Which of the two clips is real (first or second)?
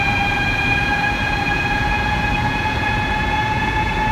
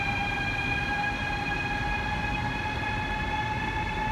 second